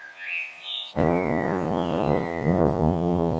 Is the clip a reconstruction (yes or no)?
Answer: yes